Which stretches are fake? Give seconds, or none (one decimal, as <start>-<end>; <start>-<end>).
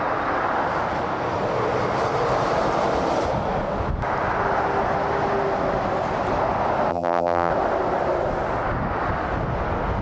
6.9-7.5